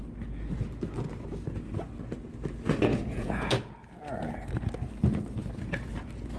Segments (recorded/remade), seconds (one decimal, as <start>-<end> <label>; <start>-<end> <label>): 0.0-2.9 recorded; 2.9-3.5 remade; 3.5-6.4 recorded